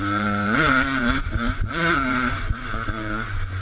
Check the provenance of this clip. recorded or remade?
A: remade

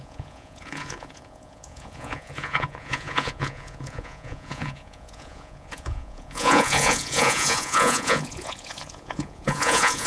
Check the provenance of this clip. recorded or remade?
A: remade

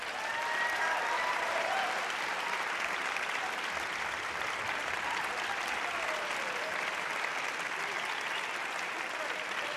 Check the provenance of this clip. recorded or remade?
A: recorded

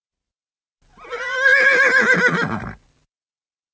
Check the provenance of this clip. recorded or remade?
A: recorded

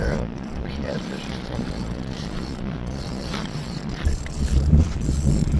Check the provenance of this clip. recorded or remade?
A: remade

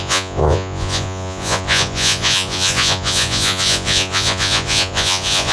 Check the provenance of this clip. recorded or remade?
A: remade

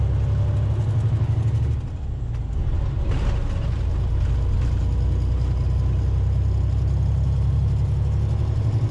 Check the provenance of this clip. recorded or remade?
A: recorded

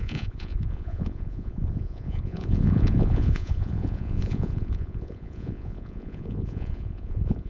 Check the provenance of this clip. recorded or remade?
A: remade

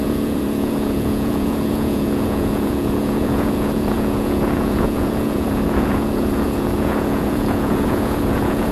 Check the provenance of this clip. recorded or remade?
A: remade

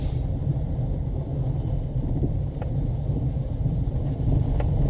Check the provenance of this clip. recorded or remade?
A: recorded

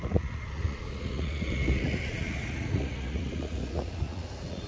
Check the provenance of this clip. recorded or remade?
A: remade